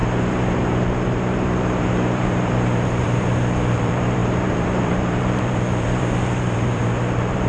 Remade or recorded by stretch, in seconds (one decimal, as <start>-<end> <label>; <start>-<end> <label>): 0.0-7.5 remade